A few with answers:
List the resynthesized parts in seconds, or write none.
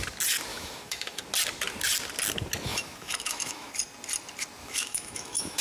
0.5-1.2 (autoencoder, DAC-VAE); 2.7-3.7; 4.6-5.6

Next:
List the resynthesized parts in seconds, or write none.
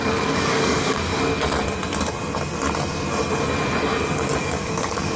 0.0-1.3 (codec, DAC); 4.4-5.2